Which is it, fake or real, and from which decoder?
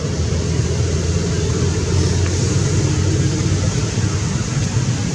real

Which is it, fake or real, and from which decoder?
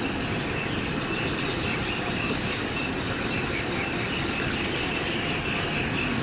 real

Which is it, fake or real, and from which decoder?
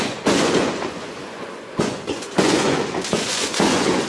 fake, vocoder, Vocos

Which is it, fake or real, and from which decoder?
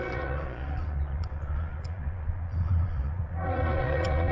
fake, vocoder, Vocos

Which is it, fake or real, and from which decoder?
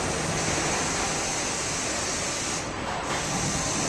real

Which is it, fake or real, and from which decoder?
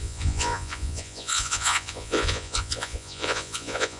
fake, vocoder, Vocos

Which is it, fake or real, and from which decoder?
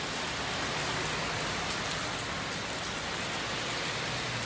real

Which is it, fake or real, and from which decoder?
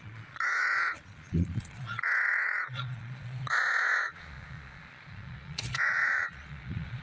fake, vocoder, Vocos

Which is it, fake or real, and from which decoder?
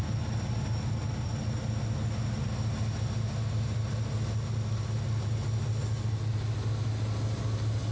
real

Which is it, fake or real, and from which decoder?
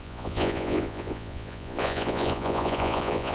fake, vocoder, Vocos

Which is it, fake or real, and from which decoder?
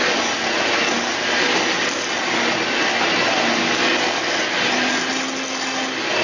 real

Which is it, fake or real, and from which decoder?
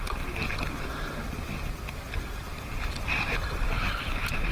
real